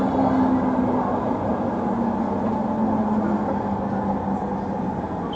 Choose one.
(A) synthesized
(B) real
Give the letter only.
B